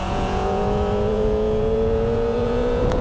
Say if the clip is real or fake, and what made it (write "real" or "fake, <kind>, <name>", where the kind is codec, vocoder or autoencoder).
fake, vocoder, Vocos